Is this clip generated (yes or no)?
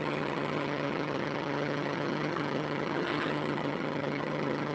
yes